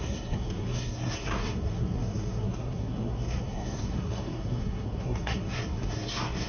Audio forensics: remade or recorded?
remade